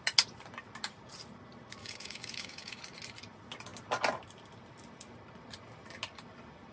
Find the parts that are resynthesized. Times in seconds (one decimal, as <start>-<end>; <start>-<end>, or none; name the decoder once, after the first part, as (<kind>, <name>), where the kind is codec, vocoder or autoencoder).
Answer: 1.8-2.8 (codec, DAC)